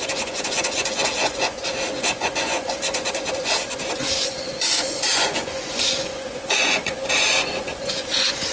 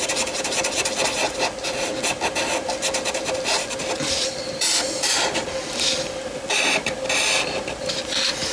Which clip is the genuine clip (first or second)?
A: second